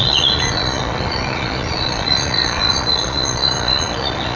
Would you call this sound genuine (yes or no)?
no